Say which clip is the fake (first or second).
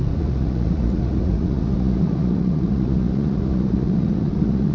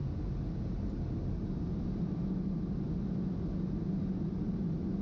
first